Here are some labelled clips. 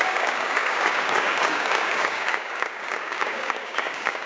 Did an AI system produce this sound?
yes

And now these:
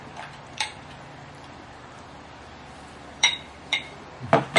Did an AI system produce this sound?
yes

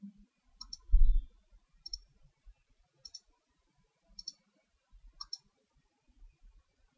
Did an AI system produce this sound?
no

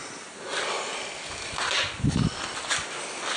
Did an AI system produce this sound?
no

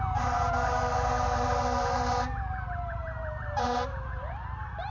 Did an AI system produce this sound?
yes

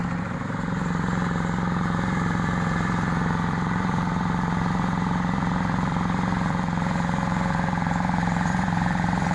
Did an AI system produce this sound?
yes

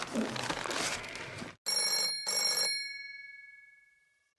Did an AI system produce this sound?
no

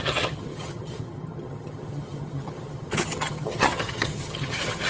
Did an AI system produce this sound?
yes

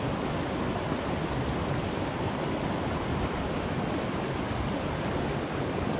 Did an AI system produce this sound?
no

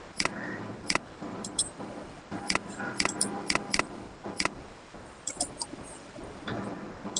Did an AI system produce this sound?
yes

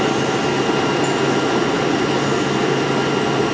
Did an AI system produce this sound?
no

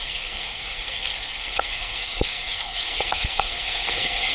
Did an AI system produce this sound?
yes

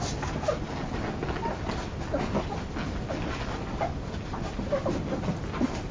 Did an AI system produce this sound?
no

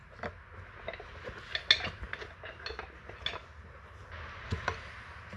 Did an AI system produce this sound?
no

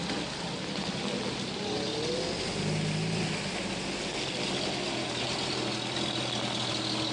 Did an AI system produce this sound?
no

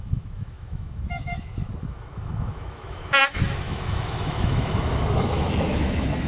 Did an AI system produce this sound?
yes